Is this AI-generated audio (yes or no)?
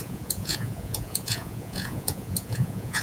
yes